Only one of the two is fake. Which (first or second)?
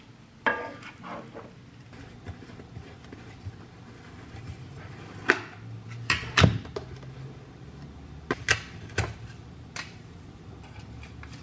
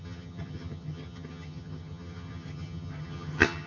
second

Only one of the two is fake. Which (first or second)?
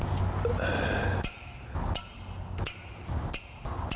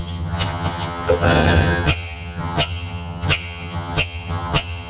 second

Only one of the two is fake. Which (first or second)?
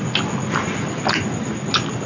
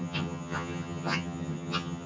second